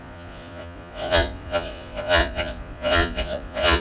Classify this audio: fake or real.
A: fake